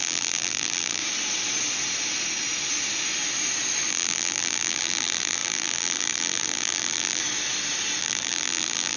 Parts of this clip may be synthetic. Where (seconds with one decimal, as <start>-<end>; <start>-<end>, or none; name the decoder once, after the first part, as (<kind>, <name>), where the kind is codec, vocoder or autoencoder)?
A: 0.0-1.0 (vocoder, BigVGAN v2); 3.9-7.2; 8.0-9.0